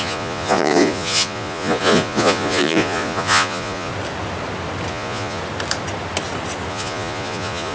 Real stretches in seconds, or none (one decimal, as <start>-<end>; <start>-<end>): 3.9-4.9; 5.4-6.7